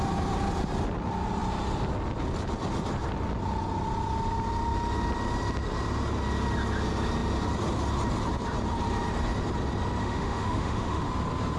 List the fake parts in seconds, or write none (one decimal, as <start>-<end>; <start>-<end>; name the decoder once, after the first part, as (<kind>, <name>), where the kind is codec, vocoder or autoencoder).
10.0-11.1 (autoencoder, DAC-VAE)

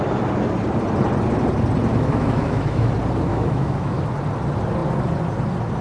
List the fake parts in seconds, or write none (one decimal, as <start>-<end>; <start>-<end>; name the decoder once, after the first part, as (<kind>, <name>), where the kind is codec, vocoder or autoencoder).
1.9-2.9 (autoencoder, DAC-VAE); 3.3-4.0

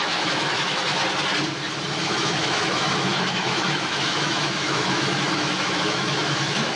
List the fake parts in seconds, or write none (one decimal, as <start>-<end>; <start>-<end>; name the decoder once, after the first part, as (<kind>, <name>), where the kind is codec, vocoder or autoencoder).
0.0-1.0 (autoencoder, DAC-VAE); 2.0-6.8

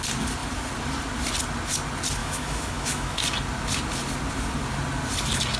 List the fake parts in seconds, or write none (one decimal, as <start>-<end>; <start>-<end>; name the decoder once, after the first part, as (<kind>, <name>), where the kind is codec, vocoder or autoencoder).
2.2-3.2 (autoencoder, DAC-VAE)